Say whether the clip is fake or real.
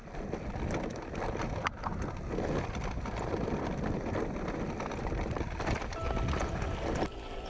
real